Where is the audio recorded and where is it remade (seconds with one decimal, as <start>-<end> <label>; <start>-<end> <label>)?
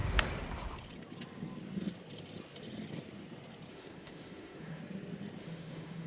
0.0-3.7 recorded; 3.7-4.8 remade; 4.8-5.4 recorded; 5.4-6.1 remade